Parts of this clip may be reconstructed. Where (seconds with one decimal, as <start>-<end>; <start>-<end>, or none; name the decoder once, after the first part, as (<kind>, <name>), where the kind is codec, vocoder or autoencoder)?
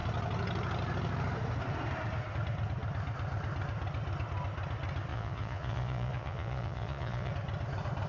5.1-7.3 (vocoder, Vocos)